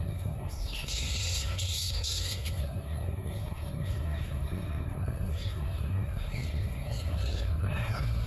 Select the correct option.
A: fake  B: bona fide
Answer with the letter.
A